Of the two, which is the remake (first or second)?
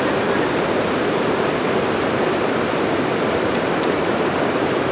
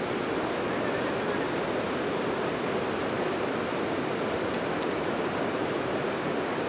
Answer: first